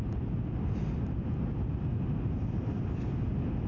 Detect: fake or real real